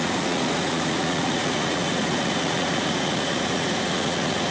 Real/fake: fake